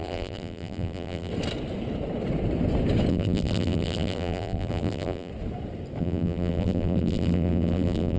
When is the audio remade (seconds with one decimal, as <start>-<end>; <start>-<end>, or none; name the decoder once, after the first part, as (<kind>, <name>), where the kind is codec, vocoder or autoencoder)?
0.0-1.3 (vocoder, BigVGAN v2); 3.1-5.3; 6.0-8.2